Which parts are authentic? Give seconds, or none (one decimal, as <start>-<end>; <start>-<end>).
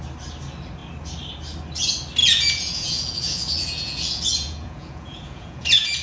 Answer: 0.0-2.2